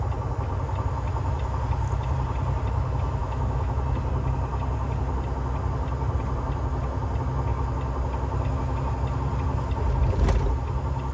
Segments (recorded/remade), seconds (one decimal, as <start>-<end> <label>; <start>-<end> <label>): 0.0-3.2 recorded; 3.2-3.8 remade; 3.8-11.1 recorded